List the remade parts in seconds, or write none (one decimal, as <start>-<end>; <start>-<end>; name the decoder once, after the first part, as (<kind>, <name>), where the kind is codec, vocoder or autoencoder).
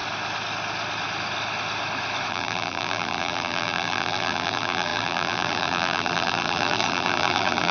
2.3-7.7 (vocoder, BigVGAN v2)